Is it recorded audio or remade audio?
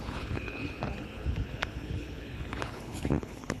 remade